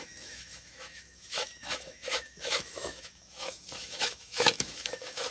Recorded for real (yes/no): no